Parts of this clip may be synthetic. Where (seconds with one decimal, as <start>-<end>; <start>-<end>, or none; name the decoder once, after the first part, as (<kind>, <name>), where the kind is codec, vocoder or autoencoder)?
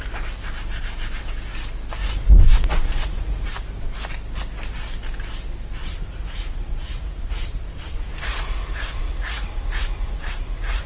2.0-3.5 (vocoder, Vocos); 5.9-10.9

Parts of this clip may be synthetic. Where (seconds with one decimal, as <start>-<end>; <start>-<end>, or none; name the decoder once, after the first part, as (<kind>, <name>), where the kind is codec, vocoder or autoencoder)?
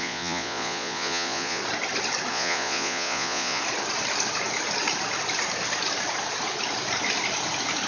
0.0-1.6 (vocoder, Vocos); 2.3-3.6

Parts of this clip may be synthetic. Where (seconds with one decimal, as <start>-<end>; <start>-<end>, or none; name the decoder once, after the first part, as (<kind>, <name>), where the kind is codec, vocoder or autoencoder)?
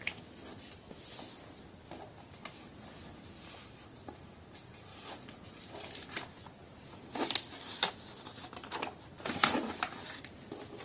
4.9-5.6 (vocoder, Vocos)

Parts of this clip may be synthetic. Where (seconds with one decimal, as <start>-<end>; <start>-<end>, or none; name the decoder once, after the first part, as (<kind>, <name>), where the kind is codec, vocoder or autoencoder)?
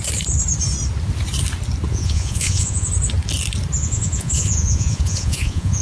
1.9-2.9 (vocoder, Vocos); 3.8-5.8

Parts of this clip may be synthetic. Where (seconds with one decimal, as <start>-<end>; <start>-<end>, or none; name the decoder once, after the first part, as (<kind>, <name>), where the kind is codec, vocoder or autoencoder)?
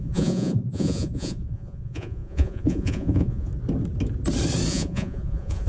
0.0-3.5 (vocoder, Vocos); 4.7-5.7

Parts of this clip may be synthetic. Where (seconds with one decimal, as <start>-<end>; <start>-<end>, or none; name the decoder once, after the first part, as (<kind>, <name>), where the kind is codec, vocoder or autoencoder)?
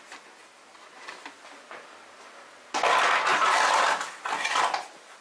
none